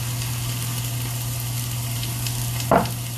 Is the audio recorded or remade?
recorded